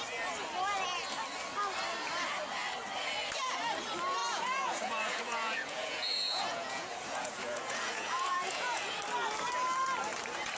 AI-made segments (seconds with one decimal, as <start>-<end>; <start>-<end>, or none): 4.2-9.0